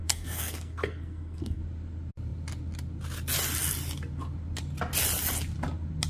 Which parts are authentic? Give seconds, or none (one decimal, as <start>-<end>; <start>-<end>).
1.6-6.1